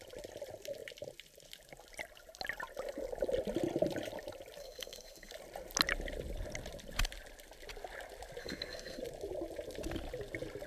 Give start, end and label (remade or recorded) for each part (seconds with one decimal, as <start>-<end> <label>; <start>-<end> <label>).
0.0-4.6 recorded; 4.6-5.3 remade; 5.3-8.4 recorded; 8.4-9.0 remade; 9.0-10.7 recorded